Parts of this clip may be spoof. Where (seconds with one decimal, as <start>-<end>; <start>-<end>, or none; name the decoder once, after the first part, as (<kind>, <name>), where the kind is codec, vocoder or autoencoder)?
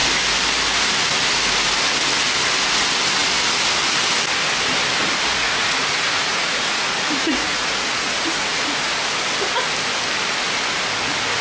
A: 5.3-8.9 (vocoder, Vocos)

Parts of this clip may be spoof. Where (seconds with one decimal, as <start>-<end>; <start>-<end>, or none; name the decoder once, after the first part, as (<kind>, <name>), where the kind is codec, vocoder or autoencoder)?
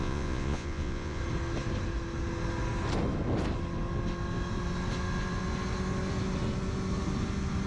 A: 0.0-1.2 (vocoder, Vocos)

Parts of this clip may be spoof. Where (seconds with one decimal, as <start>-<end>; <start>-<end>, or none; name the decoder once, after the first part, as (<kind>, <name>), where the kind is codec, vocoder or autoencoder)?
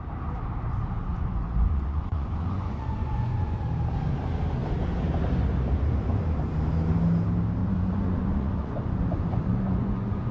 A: 1.1-3.6 (vocoder, Vocos); 7.6-10.3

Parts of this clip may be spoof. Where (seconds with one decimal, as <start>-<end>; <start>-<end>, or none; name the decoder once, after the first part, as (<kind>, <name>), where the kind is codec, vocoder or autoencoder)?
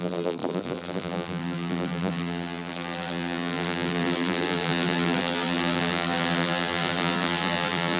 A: 0.0-8.0 (vocoder, BigVGAN v2)